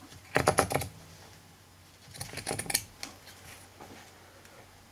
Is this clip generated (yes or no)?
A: no